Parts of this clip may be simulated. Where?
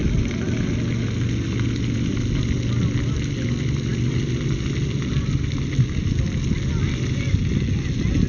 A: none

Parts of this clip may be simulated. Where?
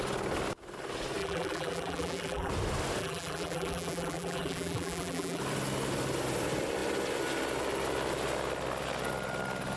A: 1.2-2.5 (vocoder, BigVGAN v2); 3.0-5.4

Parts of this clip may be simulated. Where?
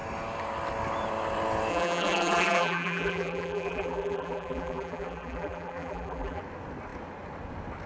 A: 1.7-6.4 (vocoder, BigVGAN v2)